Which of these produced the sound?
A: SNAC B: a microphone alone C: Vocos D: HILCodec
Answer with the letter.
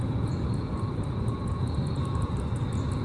C